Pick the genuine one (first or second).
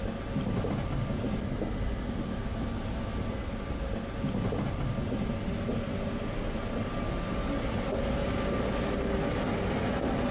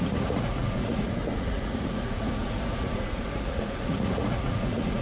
first